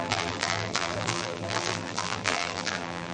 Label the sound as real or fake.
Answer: fake